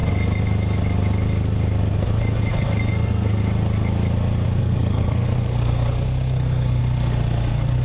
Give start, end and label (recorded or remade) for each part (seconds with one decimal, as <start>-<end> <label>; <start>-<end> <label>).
0.0-2.9 recorded; 2.9-3.4 remade; 3.4-4.6 recorded; 4.6-6.8 remade; 6.8-7.8 recorded